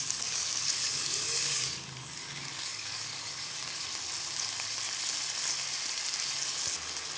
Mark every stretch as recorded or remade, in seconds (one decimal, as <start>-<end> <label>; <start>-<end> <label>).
0.0-3.8 remade; 3.8-7.2 recorded